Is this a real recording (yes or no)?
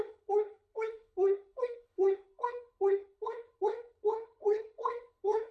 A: no